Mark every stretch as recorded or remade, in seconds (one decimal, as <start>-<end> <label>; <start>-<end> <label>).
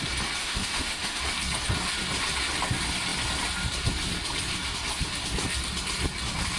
0.0-0.4 recorded; 0.4-1.2 remade; 1.2-6.6 recorded